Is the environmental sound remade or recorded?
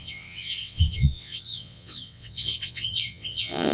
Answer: remade